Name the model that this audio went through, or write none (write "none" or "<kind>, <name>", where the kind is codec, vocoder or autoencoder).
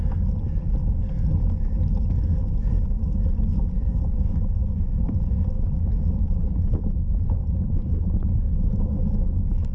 none